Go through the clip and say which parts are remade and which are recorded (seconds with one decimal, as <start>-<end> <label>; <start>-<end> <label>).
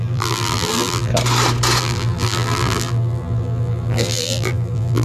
0.0-1.1 remade; 1.1-1.8 recorded; 1.8-5.0 remade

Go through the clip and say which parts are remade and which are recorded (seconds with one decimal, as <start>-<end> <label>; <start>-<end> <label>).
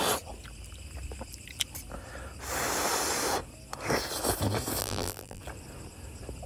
0.0-4.8 recorded; 4.8-5.4 remade; 5.4-6.5 recorded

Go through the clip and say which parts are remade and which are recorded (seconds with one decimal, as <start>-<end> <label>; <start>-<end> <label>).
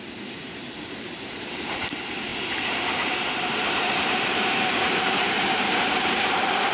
0.0-6.7 remade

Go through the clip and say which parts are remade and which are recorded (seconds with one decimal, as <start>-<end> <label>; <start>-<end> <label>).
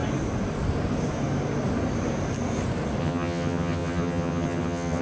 0.0-3.0 recorded; 3.0-5.0 remade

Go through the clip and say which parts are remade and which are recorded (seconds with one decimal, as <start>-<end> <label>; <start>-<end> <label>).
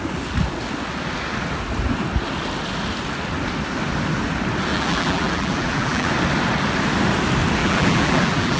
0.0-4.7 recorded; 4.7-6.1 remade; 6.1-7.6 recorded; 7.6-8.6 remade